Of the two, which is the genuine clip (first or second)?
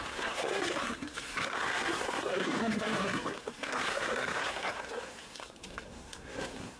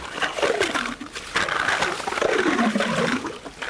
second